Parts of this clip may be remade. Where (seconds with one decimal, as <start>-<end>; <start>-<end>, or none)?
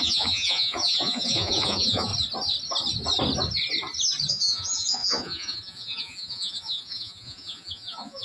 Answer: 0.0-2.1; 4.3-8.2